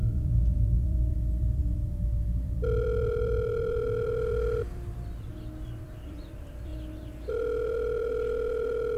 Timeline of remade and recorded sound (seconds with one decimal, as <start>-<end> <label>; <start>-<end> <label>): 0.0-6.7 remade; 6.7-7.3 recorded; 7.3-9.0 remade